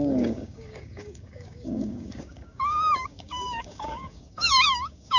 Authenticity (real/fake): fake